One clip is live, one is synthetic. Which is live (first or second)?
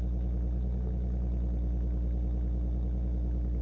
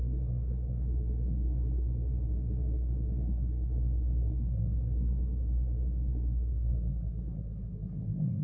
first